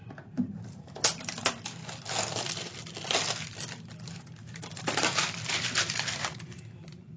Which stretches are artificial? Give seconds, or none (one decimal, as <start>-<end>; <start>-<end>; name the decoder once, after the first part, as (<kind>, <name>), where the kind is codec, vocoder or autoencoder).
0.0-1.8 (vocoder, BigVGAN v2); 4.4-7.2